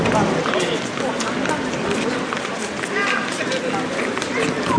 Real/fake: real